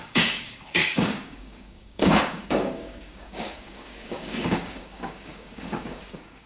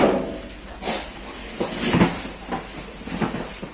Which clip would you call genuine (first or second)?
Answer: second